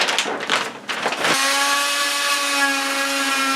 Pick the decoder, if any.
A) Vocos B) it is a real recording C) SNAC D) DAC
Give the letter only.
B